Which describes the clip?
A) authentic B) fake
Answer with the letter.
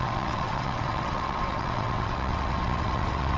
B